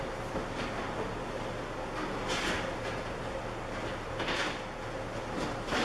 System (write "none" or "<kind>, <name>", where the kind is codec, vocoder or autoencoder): none